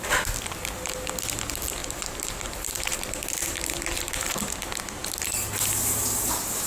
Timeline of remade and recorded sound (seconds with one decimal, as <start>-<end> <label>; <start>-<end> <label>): 0.0-1.8 recorded; 1.8-4.4 remade; 4.4-6.7 recorded

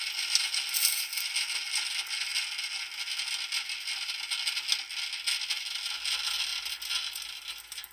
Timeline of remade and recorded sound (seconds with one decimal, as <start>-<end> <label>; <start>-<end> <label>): 0.0-7.9 recorded

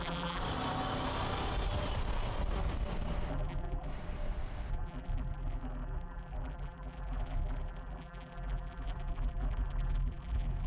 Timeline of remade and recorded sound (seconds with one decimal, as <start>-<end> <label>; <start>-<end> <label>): 0.0-0.4 remade; 0.4-3.3 recorded; 3.3-3.9 remade; 3.9-4.7 recorded; 4.7-10.7 remade